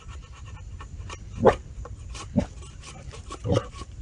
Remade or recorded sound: remade